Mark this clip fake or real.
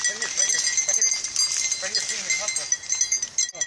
real